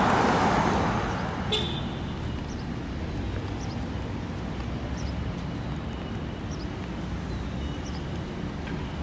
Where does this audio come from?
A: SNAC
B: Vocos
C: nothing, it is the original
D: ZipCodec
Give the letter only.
C